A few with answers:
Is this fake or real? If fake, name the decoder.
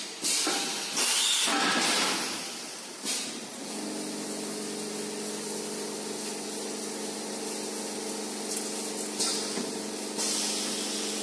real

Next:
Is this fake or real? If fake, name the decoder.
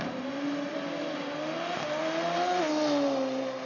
real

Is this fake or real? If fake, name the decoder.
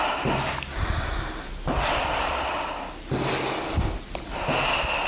real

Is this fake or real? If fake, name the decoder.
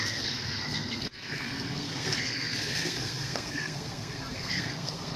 fake, codec, SNAC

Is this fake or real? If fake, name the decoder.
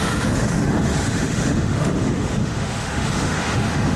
fake, autoencoder, DAC-VAE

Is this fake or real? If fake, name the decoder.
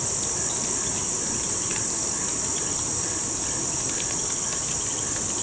fake, vocoder, BigVGAN v2